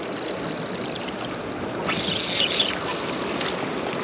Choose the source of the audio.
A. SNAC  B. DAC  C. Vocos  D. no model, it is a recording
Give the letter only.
D